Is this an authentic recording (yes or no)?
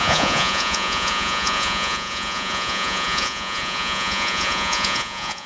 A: no